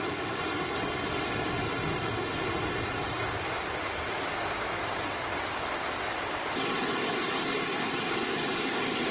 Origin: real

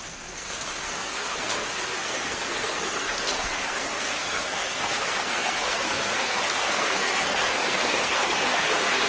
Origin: fake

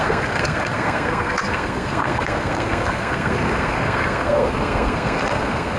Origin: fake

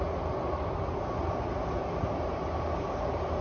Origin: real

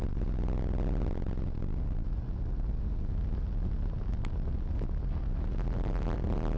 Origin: real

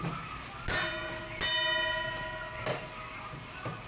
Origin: real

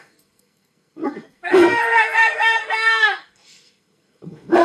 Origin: fake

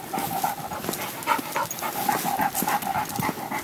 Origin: real